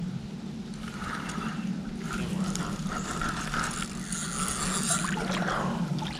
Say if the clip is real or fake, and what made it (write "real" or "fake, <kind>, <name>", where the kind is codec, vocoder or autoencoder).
real